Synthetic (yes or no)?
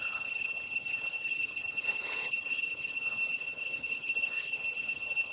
yes